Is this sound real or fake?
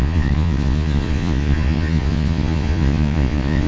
fake